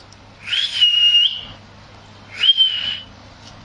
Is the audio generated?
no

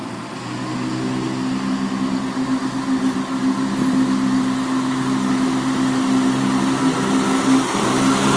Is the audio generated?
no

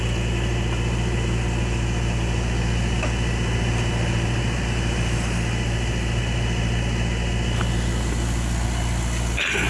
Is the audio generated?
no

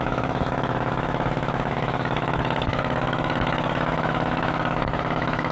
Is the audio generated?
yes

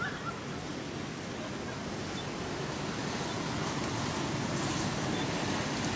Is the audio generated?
no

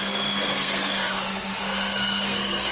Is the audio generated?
yes